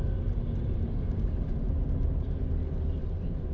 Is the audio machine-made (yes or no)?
no